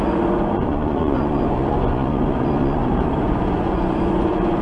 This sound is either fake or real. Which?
fake